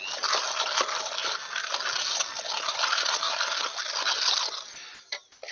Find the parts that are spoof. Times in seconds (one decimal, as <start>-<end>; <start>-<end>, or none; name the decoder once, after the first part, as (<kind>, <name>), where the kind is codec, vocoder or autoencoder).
none